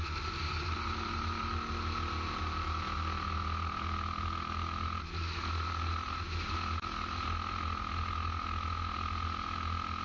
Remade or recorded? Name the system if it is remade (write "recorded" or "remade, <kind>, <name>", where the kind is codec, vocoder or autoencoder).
recorded